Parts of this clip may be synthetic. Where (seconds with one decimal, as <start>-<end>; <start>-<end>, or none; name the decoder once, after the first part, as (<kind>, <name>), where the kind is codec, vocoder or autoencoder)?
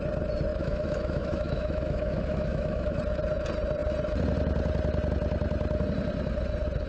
0.5-3.0 (autoencoder, DAC-VAE)